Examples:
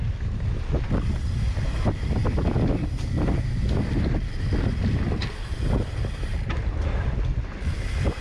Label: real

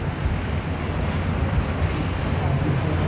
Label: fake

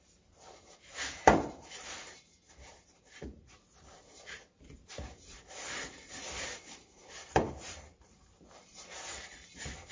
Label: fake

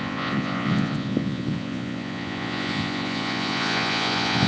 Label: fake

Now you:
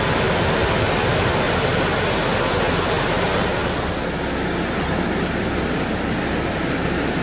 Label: real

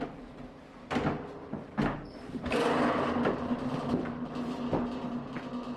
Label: real